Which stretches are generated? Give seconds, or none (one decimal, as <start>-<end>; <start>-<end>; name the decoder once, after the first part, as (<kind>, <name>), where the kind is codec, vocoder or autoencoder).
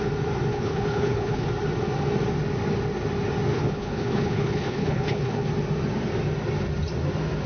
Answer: 0.5-1.5 (codec, HILCodec); 3.5-5.5